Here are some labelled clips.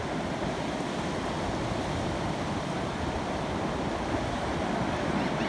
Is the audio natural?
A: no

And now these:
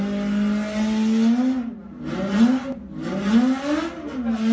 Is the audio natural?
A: yes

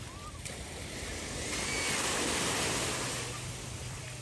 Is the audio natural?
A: yes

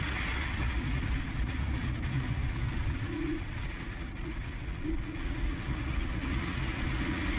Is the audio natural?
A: no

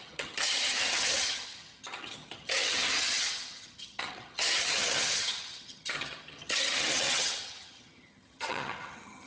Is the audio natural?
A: no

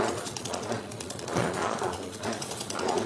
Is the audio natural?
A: no